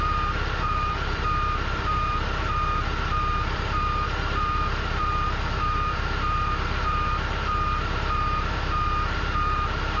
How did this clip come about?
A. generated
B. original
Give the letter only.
A